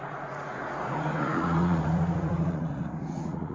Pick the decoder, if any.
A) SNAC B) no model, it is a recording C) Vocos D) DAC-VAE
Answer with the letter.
C